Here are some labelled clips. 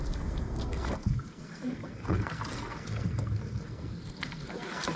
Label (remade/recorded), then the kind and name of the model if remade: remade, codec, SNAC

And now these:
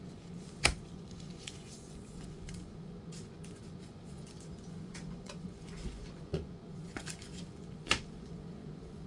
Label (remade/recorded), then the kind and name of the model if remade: remade, vocoder, Vocos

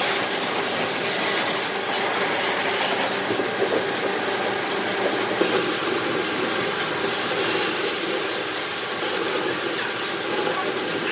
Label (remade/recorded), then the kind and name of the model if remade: recorded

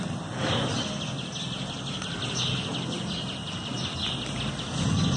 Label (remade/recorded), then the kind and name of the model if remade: recorded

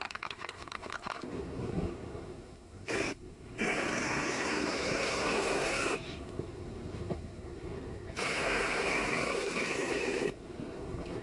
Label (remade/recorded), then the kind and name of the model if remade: remade, codec, SNAC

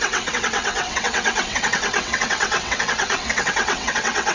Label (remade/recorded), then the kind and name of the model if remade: remade, vocoder, WaveNeXt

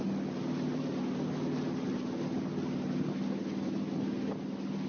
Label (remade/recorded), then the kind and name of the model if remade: recorded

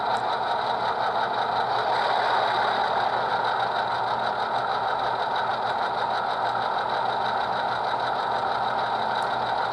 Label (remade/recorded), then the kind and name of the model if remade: recorded